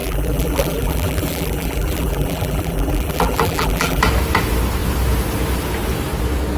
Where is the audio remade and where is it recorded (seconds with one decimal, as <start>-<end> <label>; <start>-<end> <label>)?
0.0-4.0 remade; 4.0-6.6 recorded